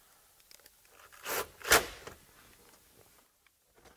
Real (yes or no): yes